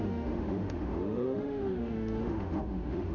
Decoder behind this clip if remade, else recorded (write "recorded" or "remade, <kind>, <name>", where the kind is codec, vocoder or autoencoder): remade, autoencoder, DAC-VAE